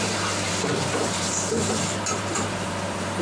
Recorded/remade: remade